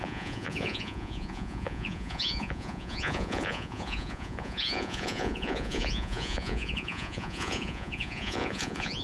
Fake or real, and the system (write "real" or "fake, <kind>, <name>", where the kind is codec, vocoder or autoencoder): fake, vocoder, Vocos